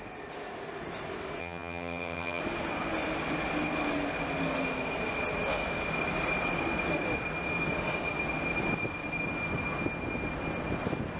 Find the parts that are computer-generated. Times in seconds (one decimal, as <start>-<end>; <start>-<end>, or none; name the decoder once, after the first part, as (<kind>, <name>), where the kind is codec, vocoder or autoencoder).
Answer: 1.4-2.4 (vocoder, HiFi-GAN)